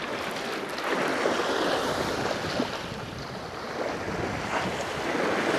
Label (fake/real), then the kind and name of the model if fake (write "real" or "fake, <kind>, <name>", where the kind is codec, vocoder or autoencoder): real